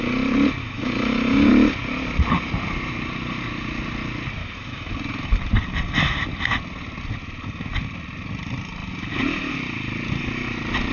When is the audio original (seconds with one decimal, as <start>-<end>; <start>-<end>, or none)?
0.0-0.6; 1.5-4.4; 4.9-10.9